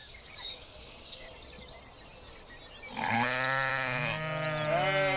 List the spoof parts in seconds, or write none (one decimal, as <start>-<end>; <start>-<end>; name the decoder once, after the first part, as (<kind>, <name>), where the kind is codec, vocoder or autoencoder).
0.0-1.3 (codec, DAC)